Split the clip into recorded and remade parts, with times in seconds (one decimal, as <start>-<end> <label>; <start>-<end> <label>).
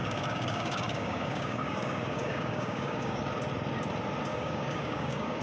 0.0-3.2 remade; 3.2-4.3 recorded; 4.3-5.4 remade